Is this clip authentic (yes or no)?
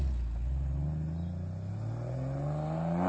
yes